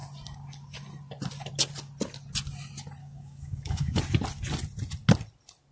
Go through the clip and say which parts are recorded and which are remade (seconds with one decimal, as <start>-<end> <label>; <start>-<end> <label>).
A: 0.0-3.0 recorded; 3.0-4.0 remade; 4.0-5.7 recorded